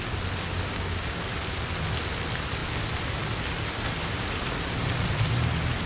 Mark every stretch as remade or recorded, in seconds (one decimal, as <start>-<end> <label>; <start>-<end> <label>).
0.0-0.7 recorded; 0.7-1.2 remade; 1.2-5.9 recorded